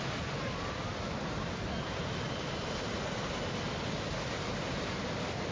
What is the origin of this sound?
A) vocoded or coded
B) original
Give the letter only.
B